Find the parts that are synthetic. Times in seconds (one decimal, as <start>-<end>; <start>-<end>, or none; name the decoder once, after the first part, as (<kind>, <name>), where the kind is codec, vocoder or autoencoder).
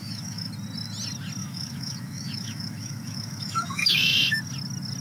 0.0-0.5 (autoencoder, DAC-VAE); 1.4-4.4